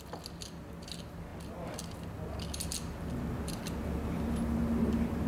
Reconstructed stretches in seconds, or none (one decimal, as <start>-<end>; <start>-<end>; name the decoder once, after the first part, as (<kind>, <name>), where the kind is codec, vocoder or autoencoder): none